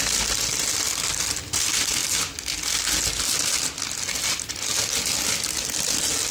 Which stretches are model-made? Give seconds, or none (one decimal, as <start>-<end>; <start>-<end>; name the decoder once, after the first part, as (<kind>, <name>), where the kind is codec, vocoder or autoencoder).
none